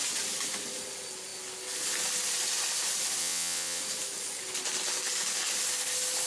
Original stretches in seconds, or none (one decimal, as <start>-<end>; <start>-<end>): 0.0-3.2; 3.8-6.3